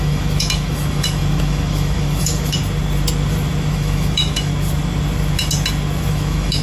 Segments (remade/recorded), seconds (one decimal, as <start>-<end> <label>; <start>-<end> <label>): 0.0-2.6 remade; 2.6-3.7 recorded; 3.7-4.5 remade; 4.5-6.1 recorded; 6.1-6.6 remade